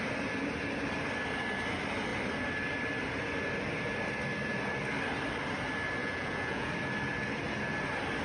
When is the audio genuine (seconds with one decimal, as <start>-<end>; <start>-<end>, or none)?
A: 0.0-6.0; 6.7-8.2